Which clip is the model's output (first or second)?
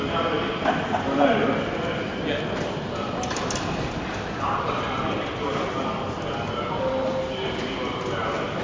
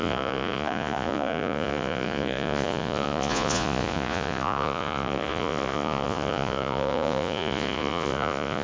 second